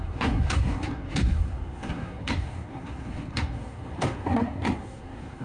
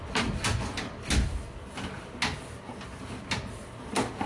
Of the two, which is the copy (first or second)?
first